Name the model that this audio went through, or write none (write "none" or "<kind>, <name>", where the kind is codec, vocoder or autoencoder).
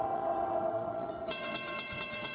vocoder, WaveNeXt